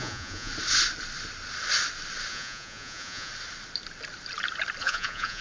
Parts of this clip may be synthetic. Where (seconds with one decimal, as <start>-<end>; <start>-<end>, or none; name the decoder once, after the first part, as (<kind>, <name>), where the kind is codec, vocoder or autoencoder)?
0.0-0.5 (vocoder, Vocos); 2.3-3.3; 4.8-5.4